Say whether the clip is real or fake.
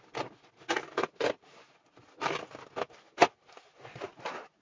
real